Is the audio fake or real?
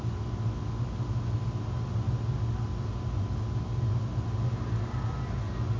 real